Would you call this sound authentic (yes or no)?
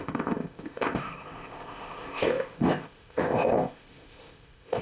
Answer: no